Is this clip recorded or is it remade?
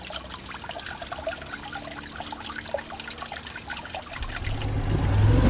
recorded